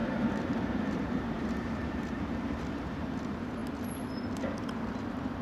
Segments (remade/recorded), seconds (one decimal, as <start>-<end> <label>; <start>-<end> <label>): 0.0-3.6 remade; 3.6-5.0 recorded; 5.0-5.4 remade